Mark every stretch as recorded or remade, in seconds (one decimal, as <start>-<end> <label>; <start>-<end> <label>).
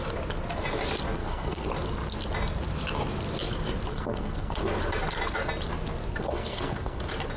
0.0-1.2 recorded; 1.2-1.7 remade; 1.7-3.9 recorded; 3.9-4.6 remade; 4.6-6.1 recorded; 6.1-7.0 remade; 7.0-7.4 recorded